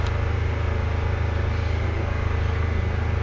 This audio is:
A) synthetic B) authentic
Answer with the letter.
B